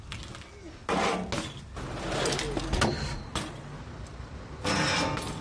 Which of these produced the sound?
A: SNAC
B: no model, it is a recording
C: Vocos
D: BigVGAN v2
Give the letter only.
B